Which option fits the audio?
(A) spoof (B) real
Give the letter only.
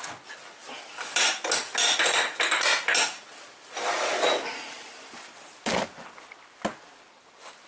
B